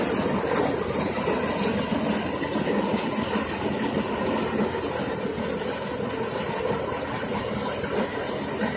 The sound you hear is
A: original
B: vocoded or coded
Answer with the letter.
A